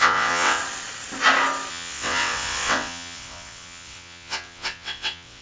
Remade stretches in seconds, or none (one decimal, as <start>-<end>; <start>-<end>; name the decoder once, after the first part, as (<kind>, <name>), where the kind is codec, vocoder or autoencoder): 0.0-0.6 (vocoder, WaveNeXt); 1.7-5.4